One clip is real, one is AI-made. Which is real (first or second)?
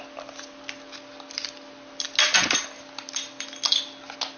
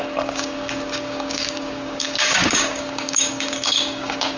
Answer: first